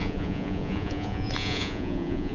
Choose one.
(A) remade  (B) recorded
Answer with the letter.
A